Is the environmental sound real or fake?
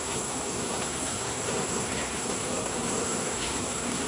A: fake